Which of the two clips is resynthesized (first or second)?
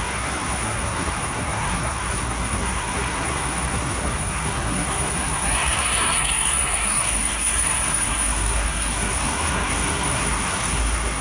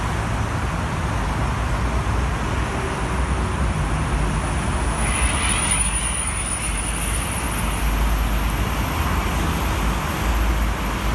first